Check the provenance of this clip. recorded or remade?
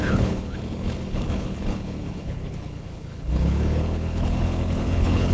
remade